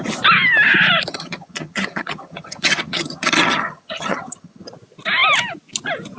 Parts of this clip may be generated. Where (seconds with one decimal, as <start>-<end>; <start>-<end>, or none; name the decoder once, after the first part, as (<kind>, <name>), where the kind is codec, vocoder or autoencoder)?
1.1-4.7 (vocoder, HiFi-GAN)